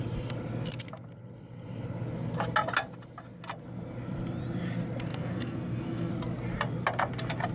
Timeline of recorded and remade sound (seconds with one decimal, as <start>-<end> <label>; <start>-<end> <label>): 0.0-5.1 recorded; 5.1-6.1 remade; 6.1-7.5 recorded